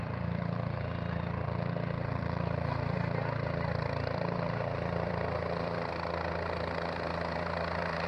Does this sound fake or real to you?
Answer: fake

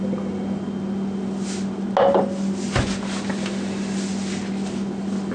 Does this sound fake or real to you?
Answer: real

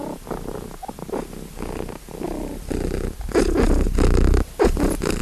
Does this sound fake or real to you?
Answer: real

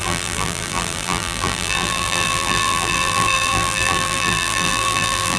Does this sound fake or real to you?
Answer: fake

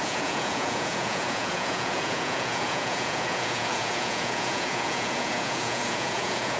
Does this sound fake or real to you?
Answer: fake